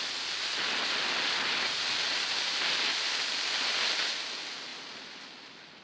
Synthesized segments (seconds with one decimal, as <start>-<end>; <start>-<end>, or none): none